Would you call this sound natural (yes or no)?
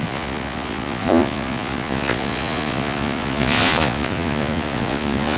no